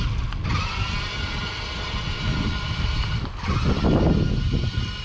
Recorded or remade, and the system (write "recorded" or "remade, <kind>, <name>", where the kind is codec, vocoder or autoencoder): recorded